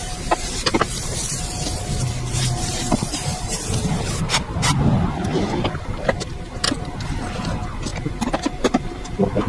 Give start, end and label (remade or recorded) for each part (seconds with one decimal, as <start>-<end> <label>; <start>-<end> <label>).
0.0-0.7 remade; 0.7-2.3 recorded; 2.3-9.5 remade